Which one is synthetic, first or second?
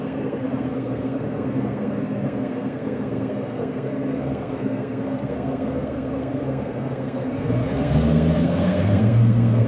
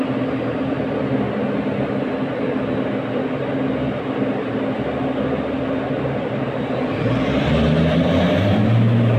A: first